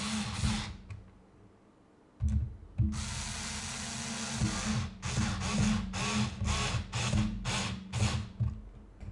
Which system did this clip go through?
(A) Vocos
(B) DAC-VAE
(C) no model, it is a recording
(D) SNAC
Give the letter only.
C